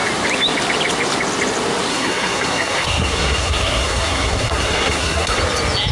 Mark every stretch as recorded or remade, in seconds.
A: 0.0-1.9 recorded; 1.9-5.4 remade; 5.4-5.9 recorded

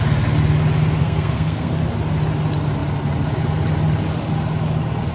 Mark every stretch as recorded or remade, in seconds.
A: 0.0-1.0 recorded; 1.0-1.7 remade; 1.7-5.1 recorded

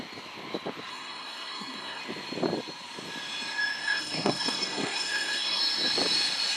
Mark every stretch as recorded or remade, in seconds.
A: 0.0-0.9 recorded; 0.9-2.0 remade; 2.0-3.8 recorded; 3.8-5.6 remade; 5.6-6.6 recorded

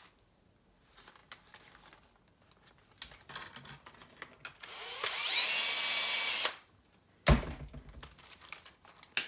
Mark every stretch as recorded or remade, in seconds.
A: 0.0-9.3 recorded